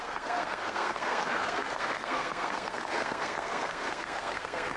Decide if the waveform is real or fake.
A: fake